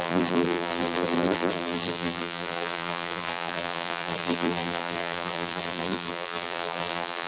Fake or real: fake